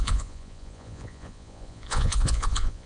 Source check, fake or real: fake